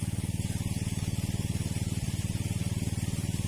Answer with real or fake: real